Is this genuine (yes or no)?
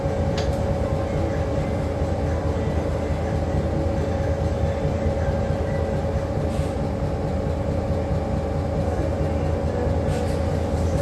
yes